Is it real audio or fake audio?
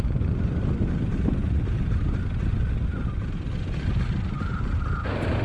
real